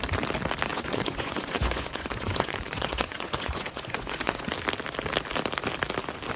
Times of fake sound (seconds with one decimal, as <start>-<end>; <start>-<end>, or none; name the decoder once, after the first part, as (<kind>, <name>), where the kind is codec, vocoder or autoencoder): 0.7-4.5 (vocoder, Vocos)